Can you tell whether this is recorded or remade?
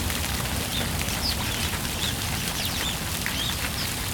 recorded